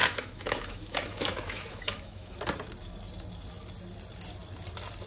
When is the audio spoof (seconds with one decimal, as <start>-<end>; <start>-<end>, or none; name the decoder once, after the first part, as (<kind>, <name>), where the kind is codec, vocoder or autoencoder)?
0.0-2.3 (autoencoder, DAC-VAE)